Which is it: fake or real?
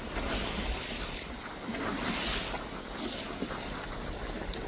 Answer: real